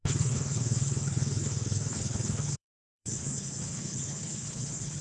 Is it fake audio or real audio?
fake